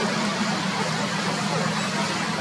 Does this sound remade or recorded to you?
recorded